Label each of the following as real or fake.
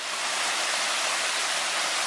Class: real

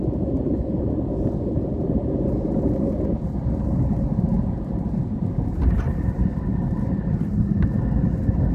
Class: real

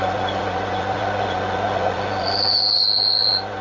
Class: fake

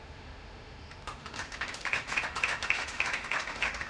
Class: fake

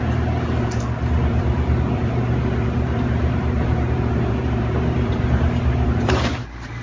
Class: fake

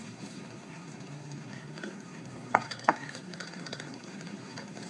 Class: fake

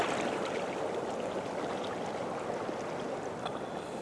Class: real